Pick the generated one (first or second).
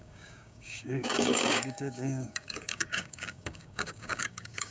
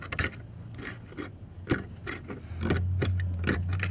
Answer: first